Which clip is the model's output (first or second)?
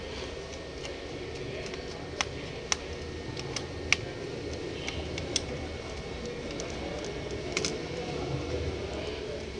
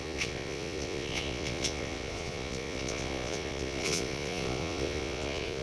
second